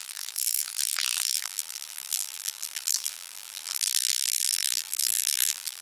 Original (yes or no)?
no